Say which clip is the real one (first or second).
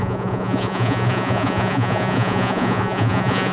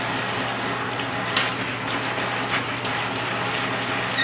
second